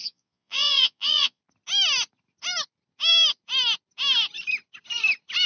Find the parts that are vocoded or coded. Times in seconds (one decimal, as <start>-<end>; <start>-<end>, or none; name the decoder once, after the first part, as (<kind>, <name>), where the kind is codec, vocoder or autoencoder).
0.0-1.4 (vocoder, Vocos)